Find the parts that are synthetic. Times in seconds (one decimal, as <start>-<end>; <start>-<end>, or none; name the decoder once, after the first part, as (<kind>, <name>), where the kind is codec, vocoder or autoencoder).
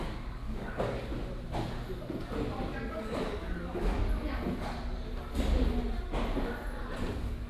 0.0-1.1 (codec, DAC); 2.9-4.0; 7.1-7.5